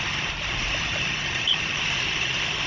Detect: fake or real real